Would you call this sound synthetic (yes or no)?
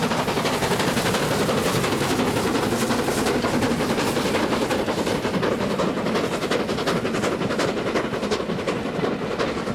no